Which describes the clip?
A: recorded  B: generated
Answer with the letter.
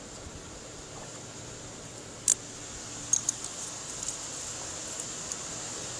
A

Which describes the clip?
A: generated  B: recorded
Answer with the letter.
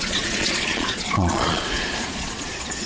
A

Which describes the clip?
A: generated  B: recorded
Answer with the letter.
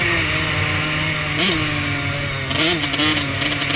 B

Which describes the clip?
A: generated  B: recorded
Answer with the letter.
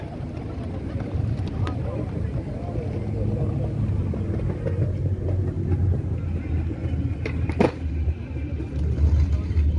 B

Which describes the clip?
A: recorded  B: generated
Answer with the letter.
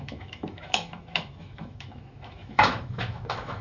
B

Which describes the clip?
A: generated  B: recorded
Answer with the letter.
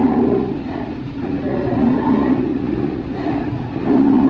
A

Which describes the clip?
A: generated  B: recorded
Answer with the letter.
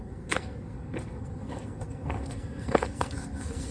A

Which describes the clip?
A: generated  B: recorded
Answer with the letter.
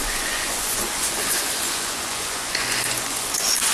A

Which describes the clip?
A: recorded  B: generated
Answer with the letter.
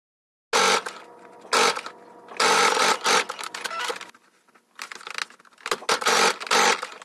A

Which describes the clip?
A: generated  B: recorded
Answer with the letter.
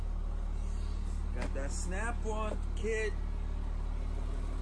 B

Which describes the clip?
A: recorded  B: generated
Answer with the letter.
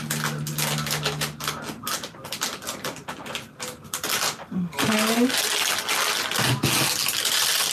A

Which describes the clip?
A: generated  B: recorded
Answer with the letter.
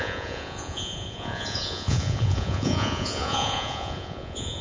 A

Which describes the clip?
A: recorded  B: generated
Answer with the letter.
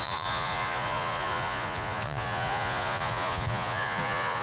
B